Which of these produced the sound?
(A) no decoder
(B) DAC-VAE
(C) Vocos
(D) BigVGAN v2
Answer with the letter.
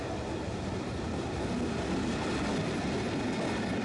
A